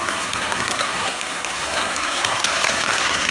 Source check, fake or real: fake